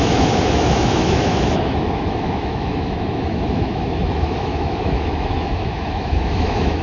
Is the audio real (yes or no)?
no